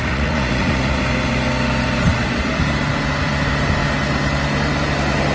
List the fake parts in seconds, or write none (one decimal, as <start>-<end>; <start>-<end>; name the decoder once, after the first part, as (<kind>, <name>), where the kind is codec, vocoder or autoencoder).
0.0-1.0 (vocoder, Vocos)